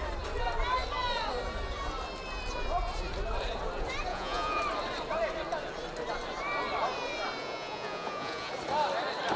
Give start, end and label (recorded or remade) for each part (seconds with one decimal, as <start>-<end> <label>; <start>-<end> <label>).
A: 0.0-4.1 recorded; 4.1-4.6 remade; 4.6-7.4 recorded; 7.4-8.5 remade; 8.5-9.4 recorded